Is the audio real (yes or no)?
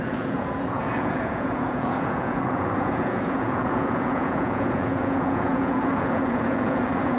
no